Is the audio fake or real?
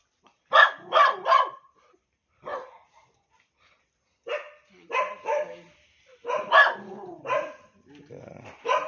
fake